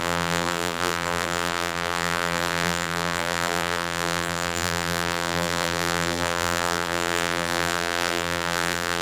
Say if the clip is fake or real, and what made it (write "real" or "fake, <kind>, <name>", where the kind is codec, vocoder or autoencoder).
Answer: fake, vocoder, BigVGAN v2